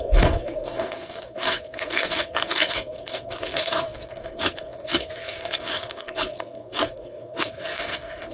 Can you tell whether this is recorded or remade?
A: remade